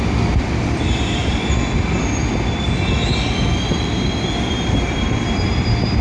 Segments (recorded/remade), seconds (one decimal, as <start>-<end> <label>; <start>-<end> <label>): 0.0-1.2 remade; 1.2-4.8 recorded; 4.8-6.0 remade